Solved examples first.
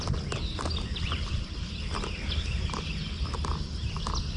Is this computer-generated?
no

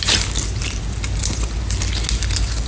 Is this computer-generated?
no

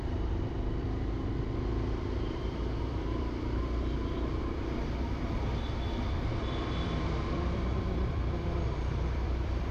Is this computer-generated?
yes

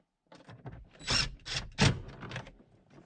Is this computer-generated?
no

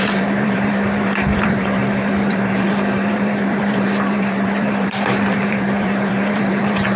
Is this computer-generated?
yes